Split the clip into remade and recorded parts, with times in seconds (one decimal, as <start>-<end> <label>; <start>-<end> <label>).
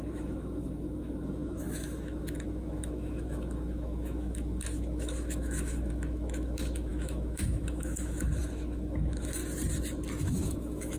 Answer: 0.0-9.4 remade; 9.4-10.2 recorded; 10.2-11.0 remade